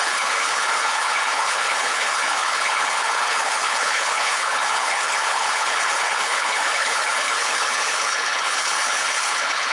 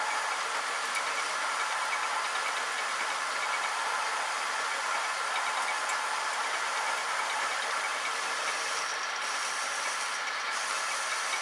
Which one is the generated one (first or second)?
first